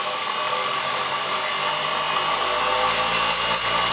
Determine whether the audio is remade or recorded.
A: recorded